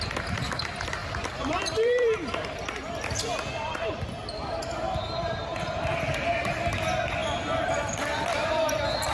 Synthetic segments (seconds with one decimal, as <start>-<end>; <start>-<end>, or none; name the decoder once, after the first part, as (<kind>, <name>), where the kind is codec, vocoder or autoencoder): 1.0-3.9 (vocoder, BigVGAN v2); 7.2-8.3